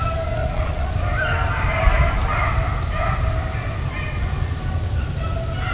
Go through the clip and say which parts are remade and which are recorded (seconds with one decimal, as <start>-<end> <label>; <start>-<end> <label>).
0.0-0.4 recorded; 0.4-0.9 remade; 0.9-5.7 recorded